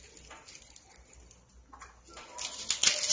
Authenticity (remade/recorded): recorded